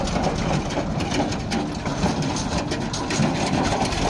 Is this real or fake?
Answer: real